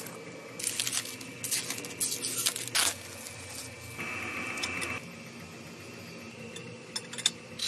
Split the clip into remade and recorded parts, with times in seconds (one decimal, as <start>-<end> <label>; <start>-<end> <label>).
0.0-7.7 recorded